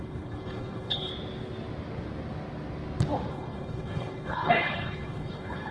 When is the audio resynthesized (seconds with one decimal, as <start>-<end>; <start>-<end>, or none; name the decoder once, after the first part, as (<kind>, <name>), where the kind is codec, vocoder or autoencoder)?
0.0-1.1 (codec, HILCodec); 3.3-5.7